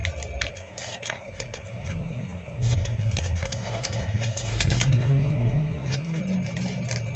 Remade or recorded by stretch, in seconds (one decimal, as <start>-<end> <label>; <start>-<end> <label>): 0.0-0.5 recorded; 0.5-6.2 remade; 6.2-7.2 recorded